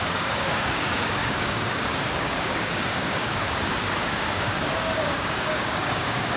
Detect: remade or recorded remade